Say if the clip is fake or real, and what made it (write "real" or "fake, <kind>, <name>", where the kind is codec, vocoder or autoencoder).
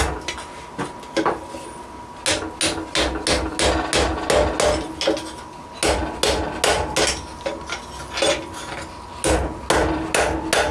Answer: real